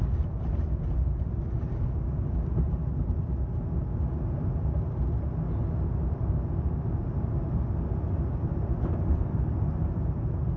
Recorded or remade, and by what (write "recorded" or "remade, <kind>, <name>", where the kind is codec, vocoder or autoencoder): recorded